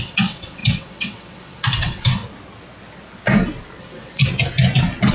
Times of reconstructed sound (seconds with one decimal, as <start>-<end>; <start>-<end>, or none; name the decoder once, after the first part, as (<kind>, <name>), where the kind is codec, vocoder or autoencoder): 0.0-2.2 (vocoder, WaveNeXt); 3.8-4.2